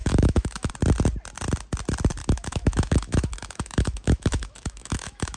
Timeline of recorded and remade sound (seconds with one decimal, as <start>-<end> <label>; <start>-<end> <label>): 0.0-0.7 remade; 0.7-2.2 recorded; 2.2-5.4 remade